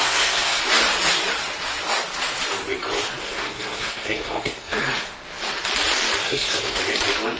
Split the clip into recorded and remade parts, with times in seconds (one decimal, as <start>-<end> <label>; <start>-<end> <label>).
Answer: 0.0-0.6 remade; 0.6-3.2 recorded; 3.2-4.8 remade; 4.8-6.2 recorded; 6.2-6.8 remade; 6.8-7.4 recorded